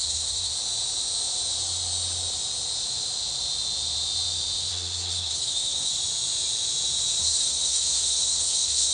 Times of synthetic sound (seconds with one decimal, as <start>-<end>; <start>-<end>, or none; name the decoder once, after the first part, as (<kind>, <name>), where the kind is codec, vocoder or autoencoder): 0.0-0.5 (codec, SNAC); 4.7-5.9; 7.2-8.9